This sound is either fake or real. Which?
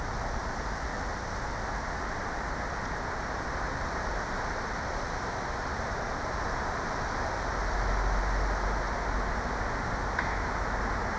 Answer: real